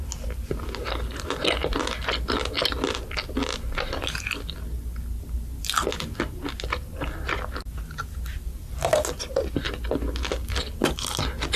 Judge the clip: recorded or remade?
recorded